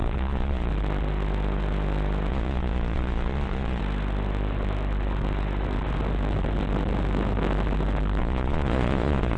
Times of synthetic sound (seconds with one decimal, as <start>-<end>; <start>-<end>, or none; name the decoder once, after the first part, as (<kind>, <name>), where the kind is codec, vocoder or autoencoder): 0.0-0.7 (vocoder, Vocos); 2.3-3.8; 8.2-9.4